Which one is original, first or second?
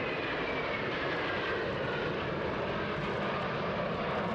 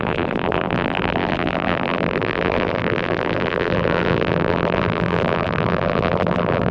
first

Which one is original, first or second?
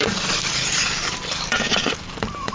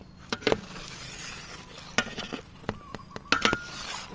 second